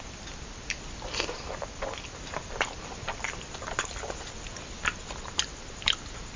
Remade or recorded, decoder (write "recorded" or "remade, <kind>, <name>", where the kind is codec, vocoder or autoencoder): recorded